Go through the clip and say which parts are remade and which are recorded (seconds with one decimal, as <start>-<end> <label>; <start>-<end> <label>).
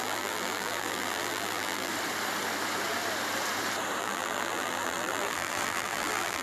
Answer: 0.0-1.9 remade; 1.9-4.0 recorded; 4.0-6.4 remade